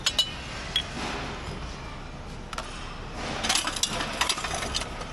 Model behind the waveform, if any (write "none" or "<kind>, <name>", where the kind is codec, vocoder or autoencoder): none